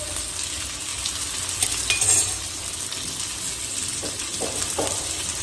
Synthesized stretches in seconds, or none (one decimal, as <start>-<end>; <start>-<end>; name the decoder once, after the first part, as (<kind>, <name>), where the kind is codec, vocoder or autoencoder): none